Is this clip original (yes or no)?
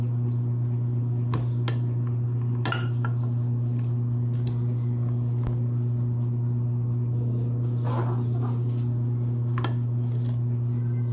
yes